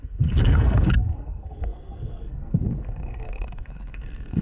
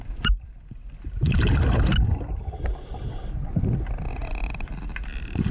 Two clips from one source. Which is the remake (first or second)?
first